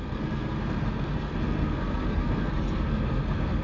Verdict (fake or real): fake